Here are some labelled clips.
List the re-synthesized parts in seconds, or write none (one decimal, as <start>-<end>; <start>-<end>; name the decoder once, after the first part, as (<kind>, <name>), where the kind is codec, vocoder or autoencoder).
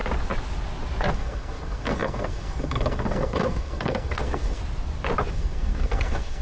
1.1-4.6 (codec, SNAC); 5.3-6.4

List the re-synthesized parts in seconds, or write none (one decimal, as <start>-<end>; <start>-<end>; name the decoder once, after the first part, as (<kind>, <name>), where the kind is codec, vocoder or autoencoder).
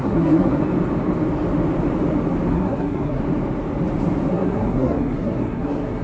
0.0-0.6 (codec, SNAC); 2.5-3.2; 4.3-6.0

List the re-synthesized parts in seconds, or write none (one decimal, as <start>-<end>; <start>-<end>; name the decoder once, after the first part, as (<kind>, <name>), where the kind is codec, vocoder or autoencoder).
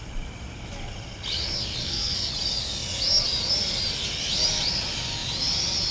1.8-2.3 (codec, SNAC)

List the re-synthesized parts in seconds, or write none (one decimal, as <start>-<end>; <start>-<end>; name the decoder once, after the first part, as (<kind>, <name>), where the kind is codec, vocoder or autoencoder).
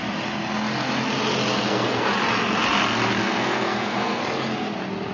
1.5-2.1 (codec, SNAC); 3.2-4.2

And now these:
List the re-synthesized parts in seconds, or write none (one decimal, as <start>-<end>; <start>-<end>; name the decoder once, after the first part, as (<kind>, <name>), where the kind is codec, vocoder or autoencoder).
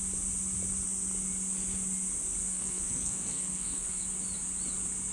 2.4-4.0 (codec, SNAC)